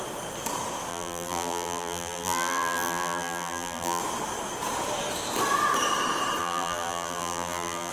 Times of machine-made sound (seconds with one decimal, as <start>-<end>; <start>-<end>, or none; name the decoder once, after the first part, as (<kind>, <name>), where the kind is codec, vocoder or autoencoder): 0.9-4.0 (vocoder, BigVGAN v2); 6.4-7.9